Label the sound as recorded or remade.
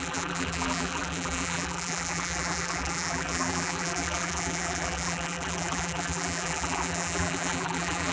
remade